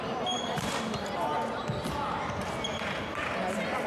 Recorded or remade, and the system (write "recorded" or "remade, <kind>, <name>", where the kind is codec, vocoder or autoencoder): recorded